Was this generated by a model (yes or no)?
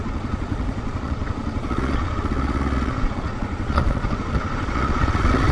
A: yes